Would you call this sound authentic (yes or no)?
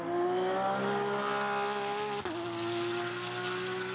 yes